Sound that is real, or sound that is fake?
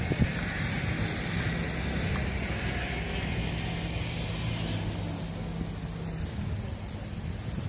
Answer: real